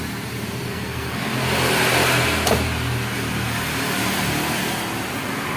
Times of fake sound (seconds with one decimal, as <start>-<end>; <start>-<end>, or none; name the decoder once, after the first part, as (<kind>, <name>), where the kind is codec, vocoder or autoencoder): 0.7-1.3 (codec, SNAC)